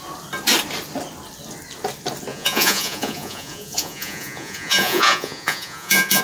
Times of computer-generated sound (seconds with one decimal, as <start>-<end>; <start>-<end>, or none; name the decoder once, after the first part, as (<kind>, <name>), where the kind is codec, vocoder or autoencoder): 2.3-6.2 (vocoder, Vocos)